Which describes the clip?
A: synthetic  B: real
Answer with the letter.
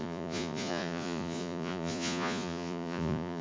A